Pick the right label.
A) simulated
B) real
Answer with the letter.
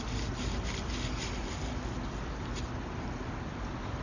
B